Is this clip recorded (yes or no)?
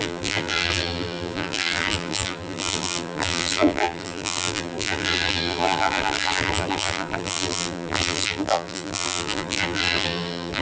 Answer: no